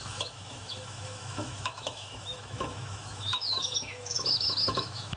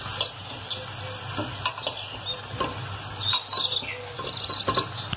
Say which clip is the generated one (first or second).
first